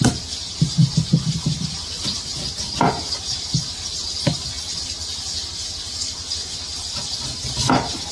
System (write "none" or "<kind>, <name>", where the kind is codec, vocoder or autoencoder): none